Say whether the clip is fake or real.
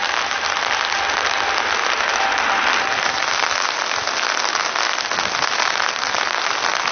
real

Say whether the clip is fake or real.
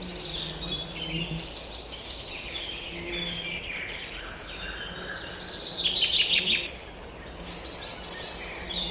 real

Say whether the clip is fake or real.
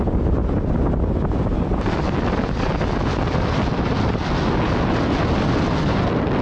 real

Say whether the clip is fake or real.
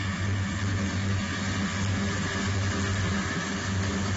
real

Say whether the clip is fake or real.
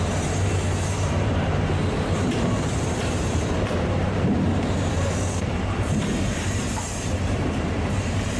fake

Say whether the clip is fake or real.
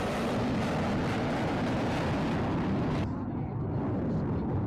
real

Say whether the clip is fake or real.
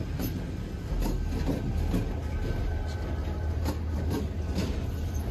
real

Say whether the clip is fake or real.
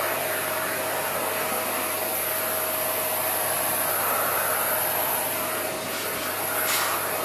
real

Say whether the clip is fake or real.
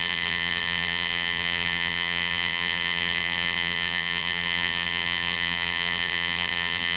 fake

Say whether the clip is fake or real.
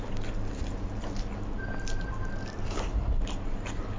fake